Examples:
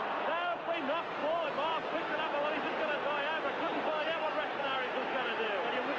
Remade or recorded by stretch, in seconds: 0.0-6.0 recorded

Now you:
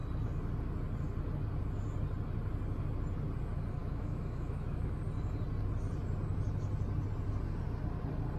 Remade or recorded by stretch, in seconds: 0.0-3.8 recorded; 3.8-5.0 remade; 5.0-8.4 recorded